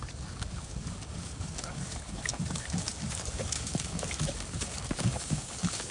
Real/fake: fake